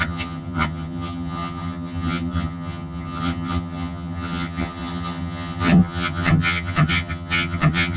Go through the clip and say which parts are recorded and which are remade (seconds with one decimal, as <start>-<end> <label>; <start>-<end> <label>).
0.0-8.0 remade